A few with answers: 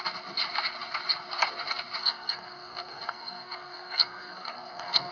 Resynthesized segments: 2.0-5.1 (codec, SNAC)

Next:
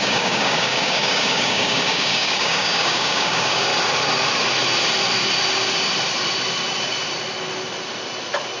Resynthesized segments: 0.0-3.7 (codec, DAC)